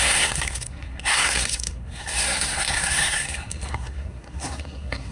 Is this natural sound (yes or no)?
no